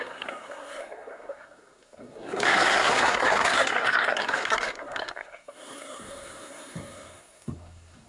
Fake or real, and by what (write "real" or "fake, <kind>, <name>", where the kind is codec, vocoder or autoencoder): fake, codec, SNAC